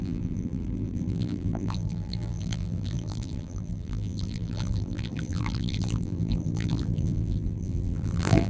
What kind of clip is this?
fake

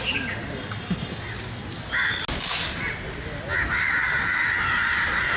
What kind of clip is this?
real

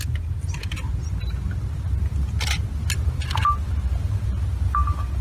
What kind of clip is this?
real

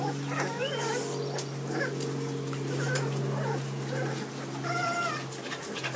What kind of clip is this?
fake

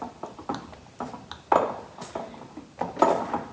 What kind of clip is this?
real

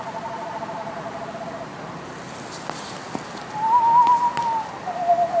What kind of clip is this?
real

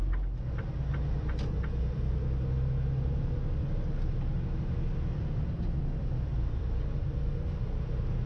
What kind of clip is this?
real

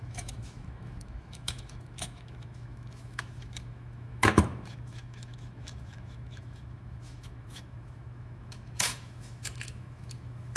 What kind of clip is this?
fake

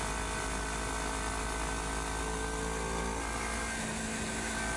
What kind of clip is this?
real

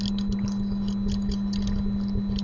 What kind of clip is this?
real